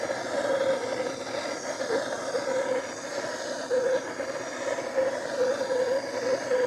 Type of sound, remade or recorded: recorded